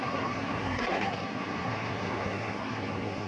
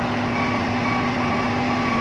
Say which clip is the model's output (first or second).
first